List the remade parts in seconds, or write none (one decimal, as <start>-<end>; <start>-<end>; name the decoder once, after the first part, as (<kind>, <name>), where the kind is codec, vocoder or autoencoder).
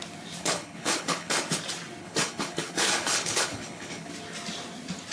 0.4-1.6 (codec, HILCodec); 2.0-4.1